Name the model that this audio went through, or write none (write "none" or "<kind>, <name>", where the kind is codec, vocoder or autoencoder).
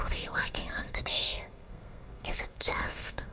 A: codec, SNAC